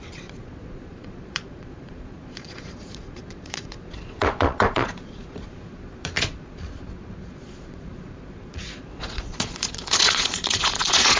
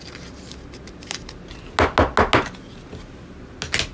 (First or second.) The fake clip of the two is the first